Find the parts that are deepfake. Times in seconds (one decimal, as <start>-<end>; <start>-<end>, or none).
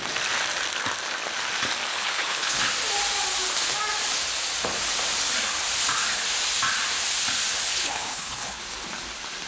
1.9-2.6; 7.7-8.6